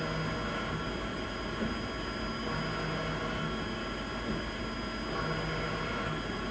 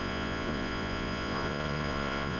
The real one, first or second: first